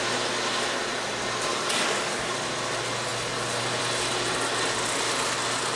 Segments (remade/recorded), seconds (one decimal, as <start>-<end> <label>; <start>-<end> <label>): 0.0-1.5 recorded; 1.5-2.3 remade; 2.3-5.8 recorded